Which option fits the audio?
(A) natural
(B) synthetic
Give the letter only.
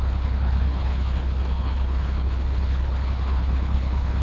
B